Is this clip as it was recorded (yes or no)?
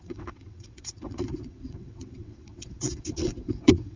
no